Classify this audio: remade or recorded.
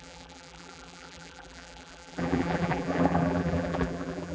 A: remade